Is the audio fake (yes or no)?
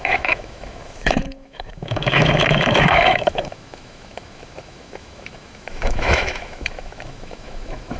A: yes